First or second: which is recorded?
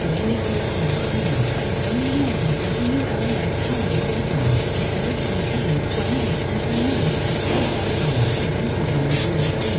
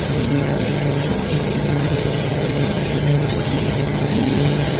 first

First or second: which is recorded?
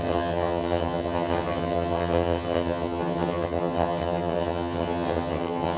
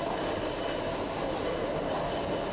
second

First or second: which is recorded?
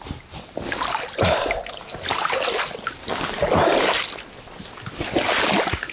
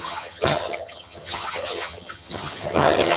first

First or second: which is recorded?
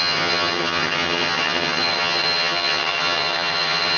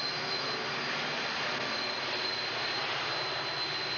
second